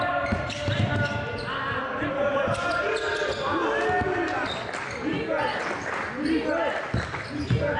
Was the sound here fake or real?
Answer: real